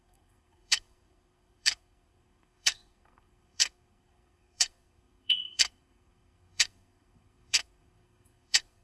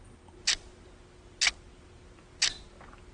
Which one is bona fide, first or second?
second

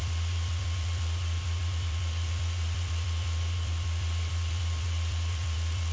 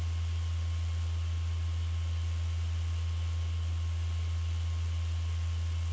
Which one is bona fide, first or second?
second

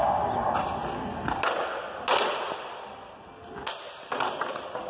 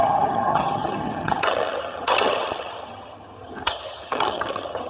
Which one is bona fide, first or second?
first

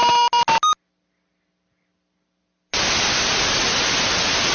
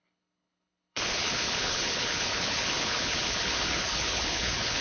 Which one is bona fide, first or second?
first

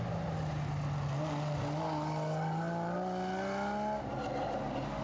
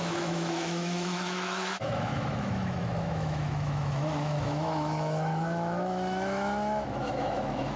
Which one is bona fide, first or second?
first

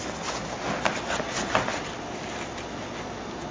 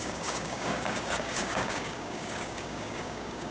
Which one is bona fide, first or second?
first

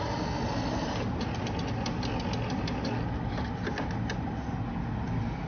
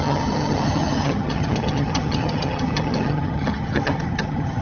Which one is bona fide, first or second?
first